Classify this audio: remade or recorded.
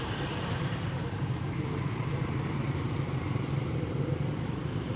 remade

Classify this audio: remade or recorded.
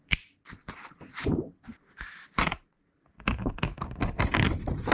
remade